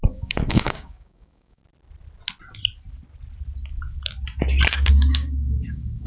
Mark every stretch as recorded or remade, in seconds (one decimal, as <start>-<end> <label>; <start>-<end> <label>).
0.0-1.6 remade; 1.6-4.9 recorded; 4.9-6.1 remade